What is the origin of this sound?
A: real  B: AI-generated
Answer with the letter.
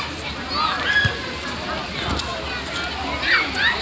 A